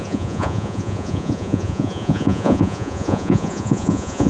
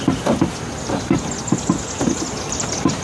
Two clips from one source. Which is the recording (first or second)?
second